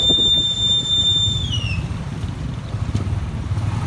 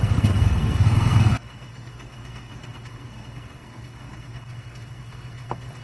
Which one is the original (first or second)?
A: first